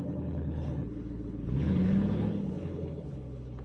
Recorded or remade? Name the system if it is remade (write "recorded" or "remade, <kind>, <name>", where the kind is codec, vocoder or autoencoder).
remade, codec, HILCodec